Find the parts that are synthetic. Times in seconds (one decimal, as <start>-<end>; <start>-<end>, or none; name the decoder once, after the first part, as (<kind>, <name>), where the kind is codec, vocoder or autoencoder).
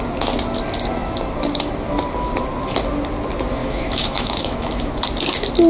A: 3.6-5.0 (autoencoder, DAC-VAE)